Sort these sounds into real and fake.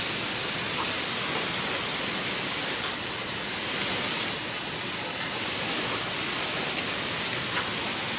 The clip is real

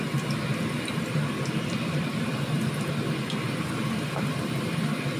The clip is fake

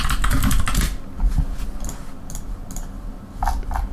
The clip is real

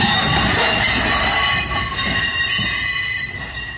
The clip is real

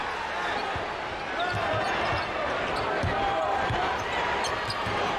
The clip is real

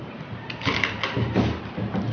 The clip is real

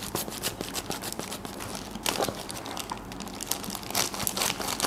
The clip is real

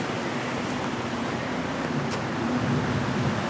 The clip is real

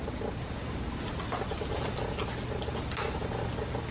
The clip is real